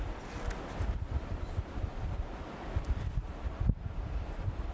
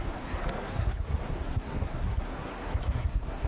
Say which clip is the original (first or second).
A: first